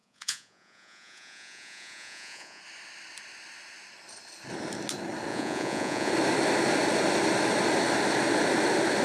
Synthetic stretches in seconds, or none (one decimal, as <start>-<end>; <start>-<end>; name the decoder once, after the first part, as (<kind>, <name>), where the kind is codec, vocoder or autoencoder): 0.0-2.6 (vocoder, Vocos); 5.3-6.1